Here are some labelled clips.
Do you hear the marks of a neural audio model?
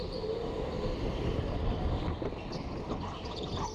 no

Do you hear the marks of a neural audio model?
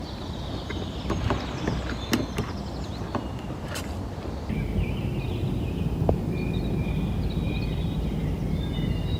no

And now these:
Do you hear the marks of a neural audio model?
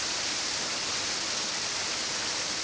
no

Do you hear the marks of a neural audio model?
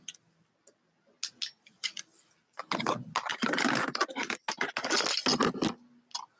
no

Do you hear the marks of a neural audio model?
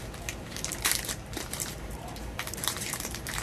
yes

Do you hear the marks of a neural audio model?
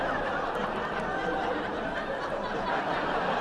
no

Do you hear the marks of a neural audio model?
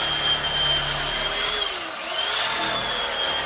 no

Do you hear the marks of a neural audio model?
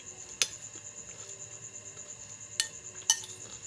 no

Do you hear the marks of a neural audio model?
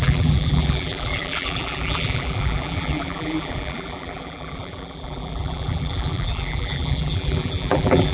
yes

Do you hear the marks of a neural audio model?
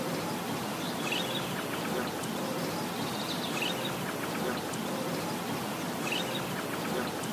no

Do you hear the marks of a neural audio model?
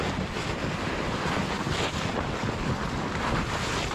no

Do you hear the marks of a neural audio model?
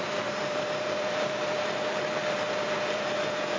yes